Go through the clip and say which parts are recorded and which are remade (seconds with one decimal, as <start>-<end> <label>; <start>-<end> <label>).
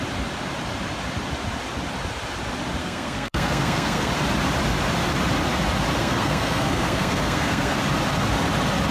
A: 0.0-2.8 recorded; 2.8-4.1 remade; 4.1-6.0 recorded; 6.0-7.8 remade; 7.8-8.9 recorded